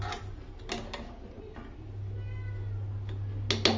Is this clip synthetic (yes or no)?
no